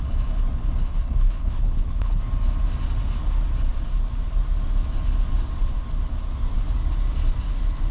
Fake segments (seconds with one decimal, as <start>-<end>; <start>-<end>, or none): 0.8-2.2